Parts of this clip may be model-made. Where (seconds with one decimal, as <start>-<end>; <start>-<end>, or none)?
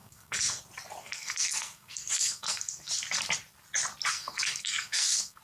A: 0.0-0.6; 1.0-2.9; 4.1-5.4